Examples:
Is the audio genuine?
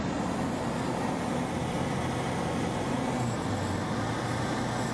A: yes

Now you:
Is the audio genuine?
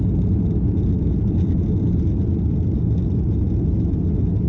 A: yes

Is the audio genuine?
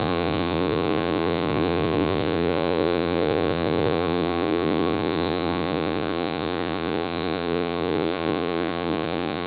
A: no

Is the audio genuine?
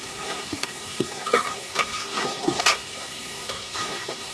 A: no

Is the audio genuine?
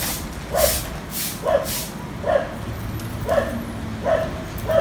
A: yes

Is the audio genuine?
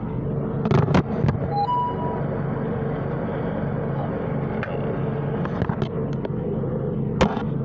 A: yes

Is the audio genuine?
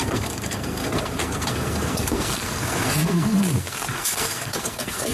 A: no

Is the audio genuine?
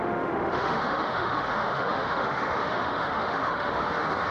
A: no